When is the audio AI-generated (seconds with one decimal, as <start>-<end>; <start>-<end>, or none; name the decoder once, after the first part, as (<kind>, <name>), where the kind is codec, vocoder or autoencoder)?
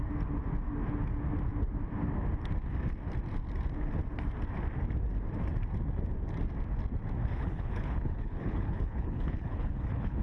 7.2-10.2 (codec, HILCodec)